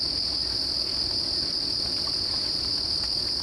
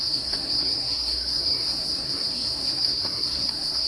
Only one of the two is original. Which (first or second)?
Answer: first